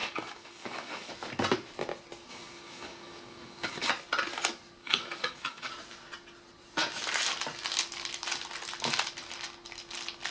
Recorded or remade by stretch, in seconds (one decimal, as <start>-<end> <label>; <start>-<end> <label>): 0.0-1.1 remade; 1.1-2.3 recorded; 2.3-3.9 remade; 3.9-4.8 recorded; 4.8-5.7 remade; 5.7-10.3 recorded